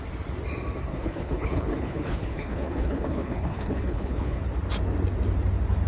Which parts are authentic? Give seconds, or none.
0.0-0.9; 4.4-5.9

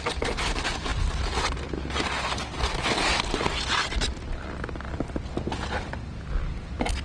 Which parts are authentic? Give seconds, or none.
0.0-7.0

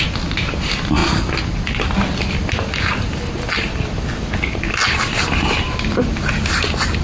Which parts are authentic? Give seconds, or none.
0.0-7.0

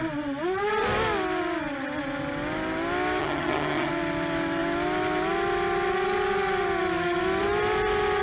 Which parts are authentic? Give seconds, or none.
0.0-3.2; 3.9-8.2

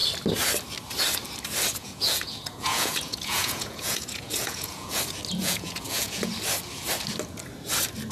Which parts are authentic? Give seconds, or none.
0.0-1.8; 5.0-5.4; 6.3-8.1